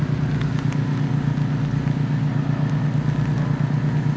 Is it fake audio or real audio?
real